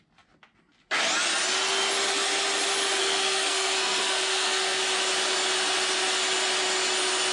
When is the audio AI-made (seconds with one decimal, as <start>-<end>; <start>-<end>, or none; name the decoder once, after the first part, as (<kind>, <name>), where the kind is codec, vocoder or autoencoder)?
3.0-4.8 (codec, SNAC)